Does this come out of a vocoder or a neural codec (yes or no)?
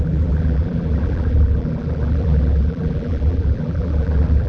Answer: yes